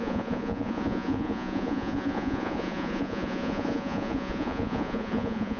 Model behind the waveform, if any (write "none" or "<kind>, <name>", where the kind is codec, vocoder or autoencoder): vocoder, Vocos